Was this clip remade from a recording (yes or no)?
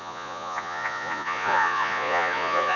yes